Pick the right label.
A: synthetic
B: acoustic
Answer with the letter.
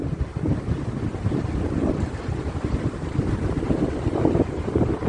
B